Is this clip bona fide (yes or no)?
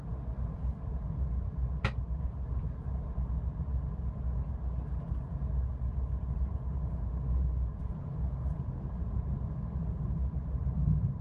yes